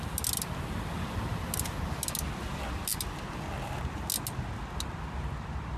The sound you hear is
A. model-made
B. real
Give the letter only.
B